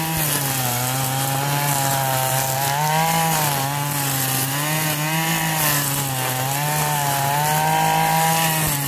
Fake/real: real